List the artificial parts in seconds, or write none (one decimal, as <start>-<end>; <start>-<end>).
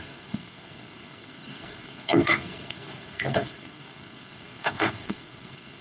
0.0-5.8